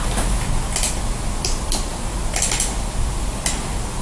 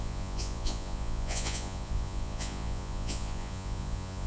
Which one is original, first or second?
first